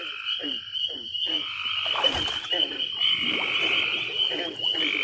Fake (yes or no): no